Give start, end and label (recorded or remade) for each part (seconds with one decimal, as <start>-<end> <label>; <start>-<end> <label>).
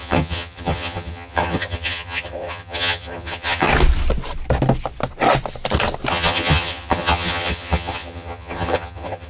0.0-3.7 remade; 3.7-6.1 recorded; 6.1-9.3 remade